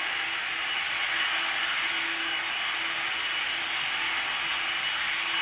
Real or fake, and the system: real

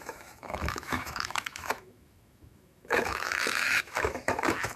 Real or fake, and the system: fake, autoencoder, DAC-VAE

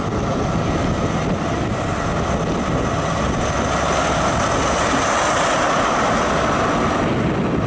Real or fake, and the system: real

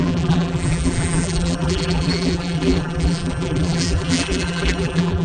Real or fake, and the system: fake, vocoder, BigVGAN v2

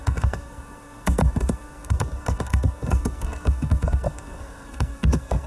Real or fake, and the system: fake, codec, SNAC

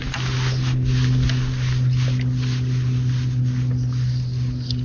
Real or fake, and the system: real